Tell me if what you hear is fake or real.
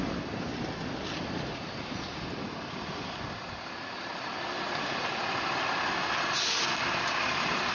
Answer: real